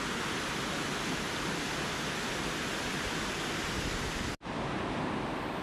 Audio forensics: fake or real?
real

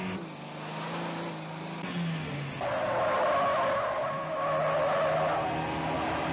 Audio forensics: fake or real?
real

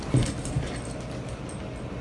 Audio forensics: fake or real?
real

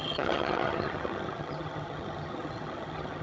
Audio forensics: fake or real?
fake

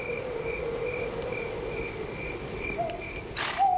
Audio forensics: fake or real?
real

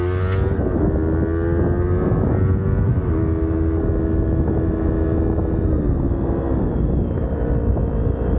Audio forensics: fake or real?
real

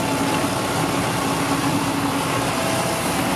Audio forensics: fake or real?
real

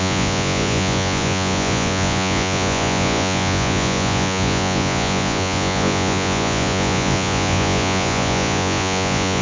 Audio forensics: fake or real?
fake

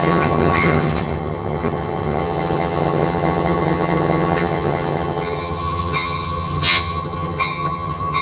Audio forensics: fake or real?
fake